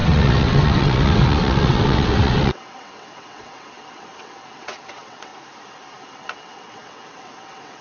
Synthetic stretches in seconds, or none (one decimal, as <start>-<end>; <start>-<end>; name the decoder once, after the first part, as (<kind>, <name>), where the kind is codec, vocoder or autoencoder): 0.0-5.3 (vocoder, WaveNeXt); 6.0-7.8